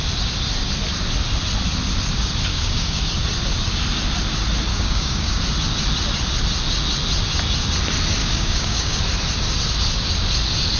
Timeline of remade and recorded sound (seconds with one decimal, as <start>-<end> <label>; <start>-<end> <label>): 0.0-2.5 recorded; 2.5-3.0 remade; 3.0-4.7 recorded; 4.7-5.4 remade; 5.4-8.2 recorded; 8.2-9.0 remade; 9.0-10.8 recorded